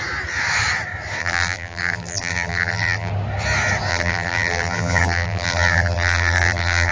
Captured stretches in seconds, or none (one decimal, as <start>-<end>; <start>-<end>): 0.0-1.2; 3.1-3.9